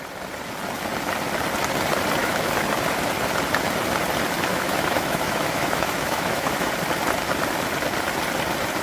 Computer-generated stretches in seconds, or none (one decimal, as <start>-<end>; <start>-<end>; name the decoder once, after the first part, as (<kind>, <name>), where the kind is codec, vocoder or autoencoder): 2.2-2.7 (autoencoder, DAC-VAE); 4.5-6.7